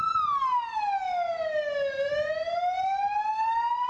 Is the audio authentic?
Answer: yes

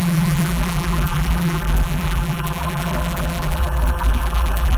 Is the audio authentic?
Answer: no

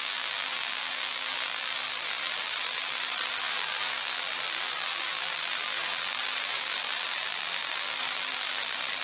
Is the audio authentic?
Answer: no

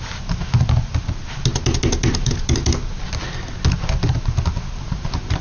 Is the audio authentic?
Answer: yes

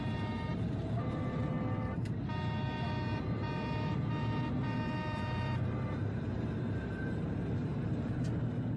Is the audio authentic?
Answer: no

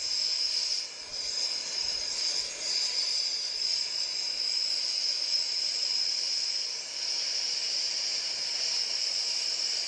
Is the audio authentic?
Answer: yes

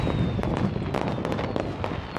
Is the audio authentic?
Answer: yes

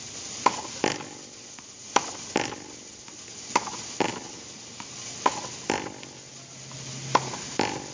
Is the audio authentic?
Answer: yes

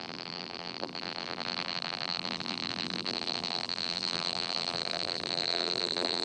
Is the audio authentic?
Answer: no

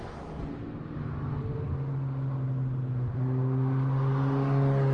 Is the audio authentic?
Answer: yes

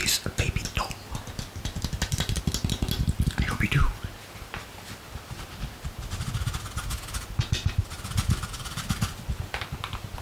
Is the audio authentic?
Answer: yes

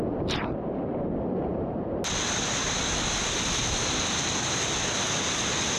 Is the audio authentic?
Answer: yes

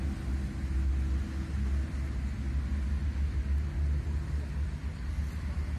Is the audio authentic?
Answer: yes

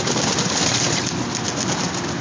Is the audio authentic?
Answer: yes